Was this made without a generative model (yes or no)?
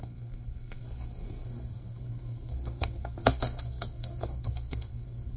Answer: no